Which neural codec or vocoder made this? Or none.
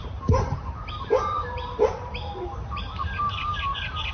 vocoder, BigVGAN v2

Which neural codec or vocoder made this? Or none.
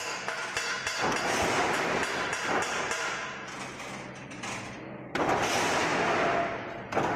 none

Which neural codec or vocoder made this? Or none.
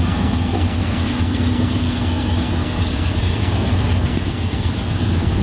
codec, SNAC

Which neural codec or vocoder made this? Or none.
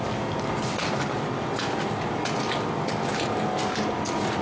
none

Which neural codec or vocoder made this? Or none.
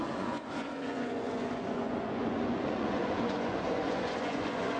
vocoder, Vocos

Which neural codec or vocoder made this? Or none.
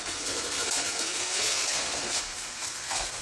codec, SNAC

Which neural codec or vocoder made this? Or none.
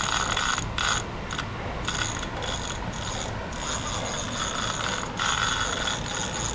none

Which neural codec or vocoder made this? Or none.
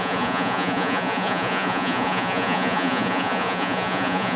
vocoder, Vocos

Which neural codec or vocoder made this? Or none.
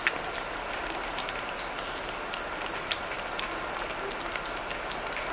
none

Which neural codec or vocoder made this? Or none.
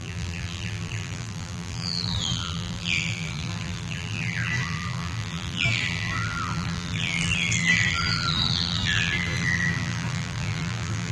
vocoder, BigVGAN v2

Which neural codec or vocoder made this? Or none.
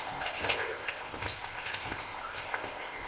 codec, ZipCodec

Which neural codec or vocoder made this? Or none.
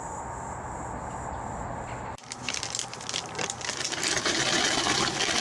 none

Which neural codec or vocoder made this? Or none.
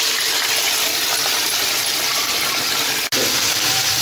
none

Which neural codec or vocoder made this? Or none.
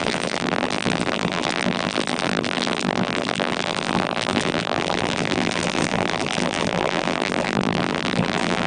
vocoder, BigVGAN v2